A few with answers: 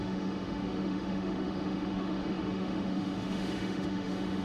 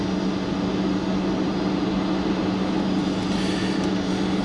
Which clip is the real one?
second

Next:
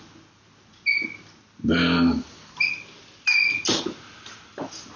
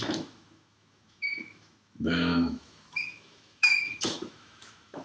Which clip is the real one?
first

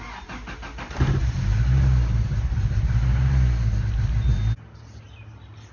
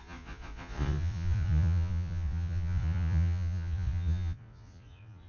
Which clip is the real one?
first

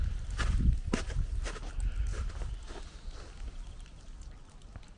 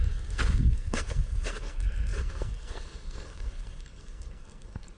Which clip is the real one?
first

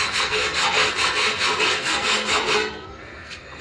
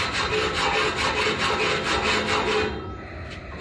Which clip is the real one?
second